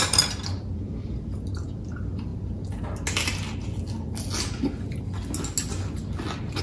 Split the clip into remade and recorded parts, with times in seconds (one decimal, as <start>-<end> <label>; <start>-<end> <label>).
0.0-6.6 recorded